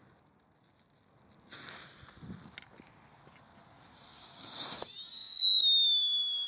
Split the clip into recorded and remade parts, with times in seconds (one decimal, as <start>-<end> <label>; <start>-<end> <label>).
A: 0.0-4.1 recorded; 4.1-5.6 remade; 5.6-6.5 recorded